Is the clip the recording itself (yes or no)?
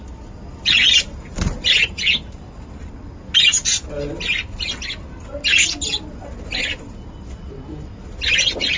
yes